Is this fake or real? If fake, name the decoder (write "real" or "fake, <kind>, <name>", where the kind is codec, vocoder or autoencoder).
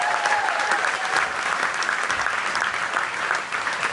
real